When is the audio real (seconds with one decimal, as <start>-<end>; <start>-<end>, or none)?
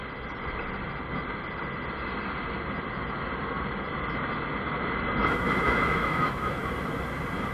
0.0-5.2; 6.6-7.5